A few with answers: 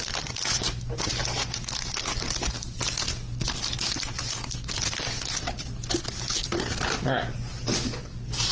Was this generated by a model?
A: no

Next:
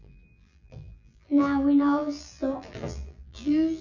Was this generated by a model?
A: yes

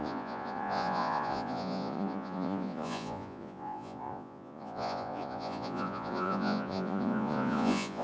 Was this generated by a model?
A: yes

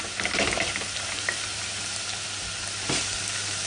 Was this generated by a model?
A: no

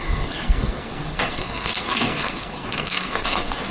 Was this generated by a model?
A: yes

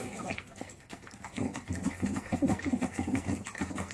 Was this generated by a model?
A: yes